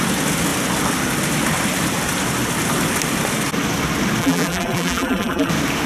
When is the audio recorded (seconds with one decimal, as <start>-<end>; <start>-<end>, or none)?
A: 0.0-4.2; 5.5-5.9